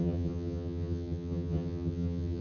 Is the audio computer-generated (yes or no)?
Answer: yes